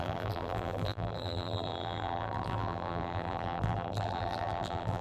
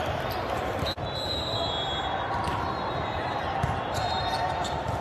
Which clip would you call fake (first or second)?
first